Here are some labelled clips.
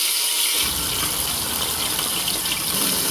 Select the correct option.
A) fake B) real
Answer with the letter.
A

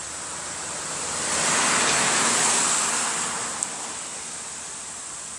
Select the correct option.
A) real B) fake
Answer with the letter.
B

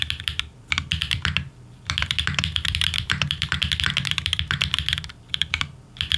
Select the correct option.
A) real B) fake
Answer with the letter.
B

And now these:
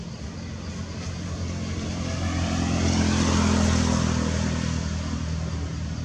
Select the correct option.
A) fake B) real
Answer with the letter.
B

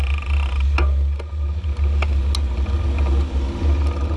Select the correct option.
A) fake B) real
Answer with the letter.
B